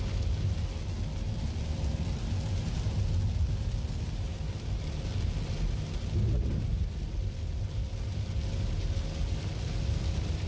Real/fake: real